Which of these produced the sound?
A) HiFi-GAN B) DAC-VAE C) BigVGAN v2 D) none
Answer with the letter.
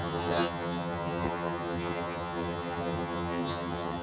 A